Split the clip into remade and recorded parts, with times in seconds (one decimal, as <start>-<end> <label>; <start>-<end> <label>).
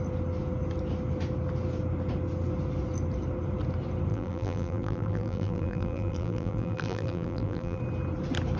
0.0-4.1 recorded; 4.1-7.8 remade; 7.8-8.6 recorded